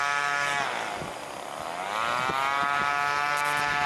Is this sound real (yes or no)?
yes